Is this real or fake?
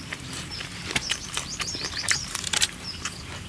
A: fake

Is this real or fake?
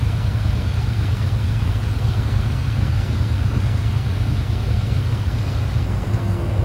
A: fake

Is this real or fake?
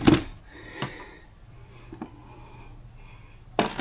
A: real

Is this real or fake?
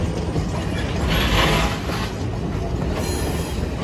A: real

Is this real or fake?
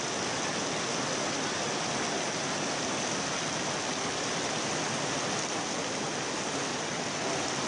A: real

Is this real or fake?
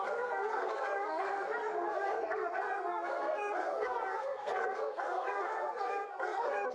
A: fake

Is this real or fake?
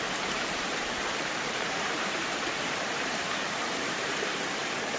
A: fake